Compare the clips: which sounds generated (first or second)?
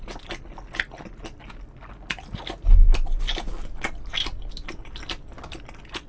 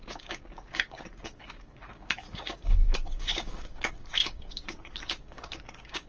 second